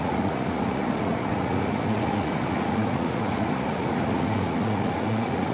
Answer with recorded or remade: remade